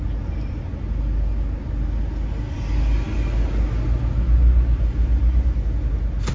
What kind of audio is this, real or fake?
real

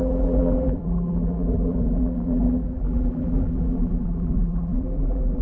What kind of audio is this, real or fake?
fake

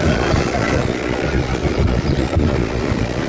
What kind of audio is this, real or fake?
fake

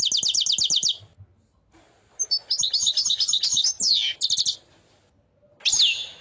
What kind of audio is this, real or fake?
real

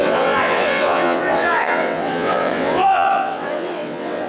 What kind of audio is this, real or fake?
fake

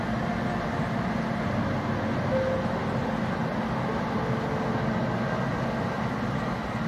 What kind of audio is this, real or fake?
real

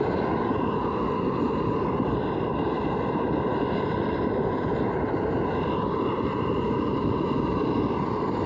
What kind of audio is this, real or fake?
real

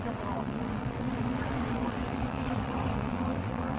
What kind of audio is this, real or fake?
fake